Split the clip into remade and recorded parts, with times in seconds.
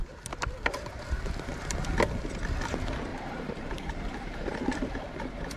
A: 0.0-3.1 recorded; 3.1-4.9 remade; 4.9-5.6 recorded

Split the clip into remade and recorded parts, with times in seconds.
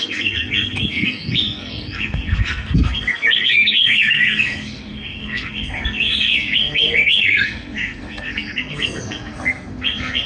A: 0.0-10.3 remade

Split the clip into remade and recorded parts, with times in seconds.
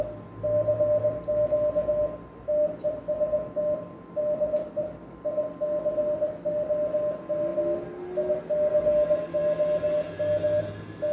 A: 0.0-11.1 recorded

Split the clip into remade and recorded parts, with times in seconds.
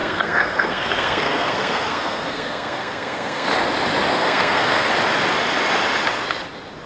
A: 0.0-3.5 remade; 3.5-4.1 recorded; 4.1-4.9 remade; 4.9-6.9 recorded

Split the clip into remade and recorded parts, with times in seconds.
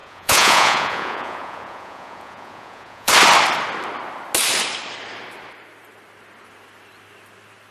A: 0.0-3.1 remade; 3.1-7.7 recorded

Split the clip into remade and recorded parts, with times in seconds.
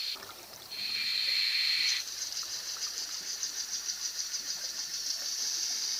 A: 0.0-1.1 remade; 1.1-1.7 recorded; 1.7-5.2 remade; 5.2-6.0 recorded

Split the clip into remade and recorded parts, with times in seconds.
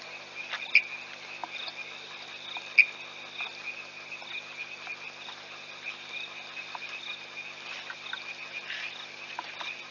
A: 0.0-9.9 recorded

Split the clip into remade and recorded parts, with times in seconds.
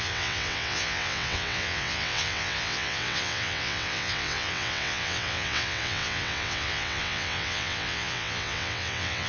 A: 0.0-9.3 remade